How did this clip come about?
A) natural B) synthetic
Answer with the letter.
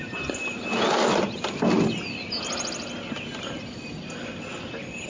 A